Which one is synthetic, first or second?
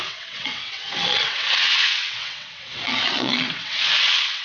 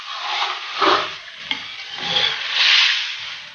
first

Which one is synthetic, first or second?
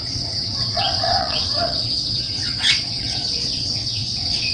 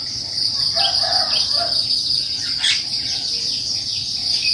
first